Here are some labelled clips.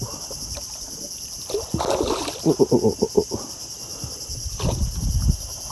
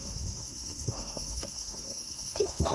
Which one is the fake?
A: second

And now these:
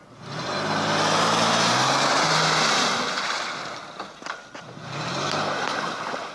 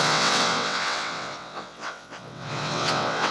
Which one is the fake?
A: second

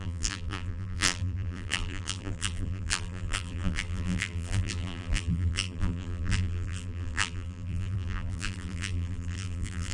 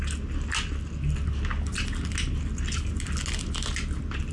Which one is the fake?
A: first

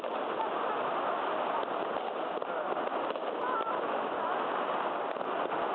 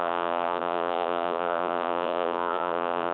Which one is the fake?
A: second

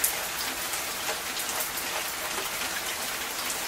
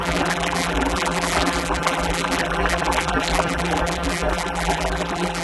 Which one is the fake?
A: second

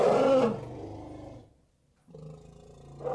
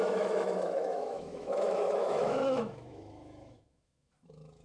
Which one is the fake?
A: second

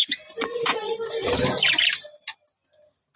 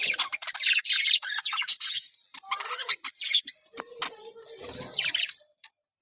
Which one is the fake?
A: second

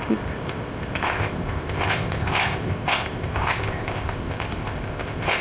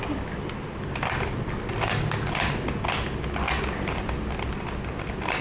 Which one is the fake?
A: first